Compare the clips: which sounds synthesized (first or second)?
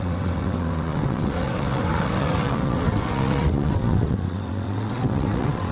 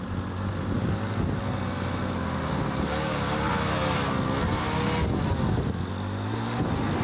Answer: first